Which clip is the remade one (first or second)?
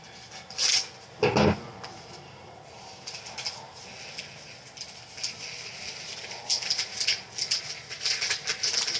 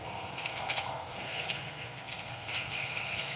second